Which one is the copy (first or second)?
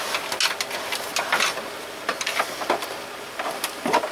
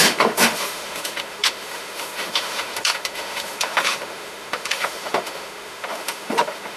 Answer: second